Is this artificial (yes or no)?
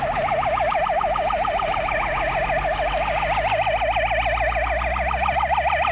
no